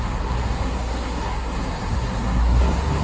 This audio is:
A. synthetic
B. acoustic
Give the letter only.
A